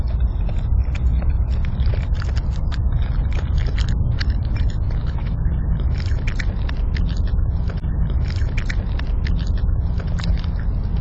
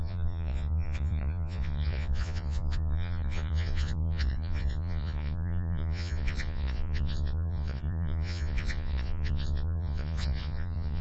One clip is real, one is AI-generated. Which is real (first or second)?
first